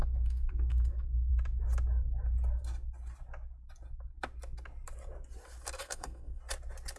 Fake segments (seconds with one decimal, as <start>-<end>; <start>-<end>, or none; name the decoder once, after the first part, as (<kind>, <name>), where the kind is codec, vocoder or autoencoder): 0.0-1.3 (codec, SNAC); 5.8-6.4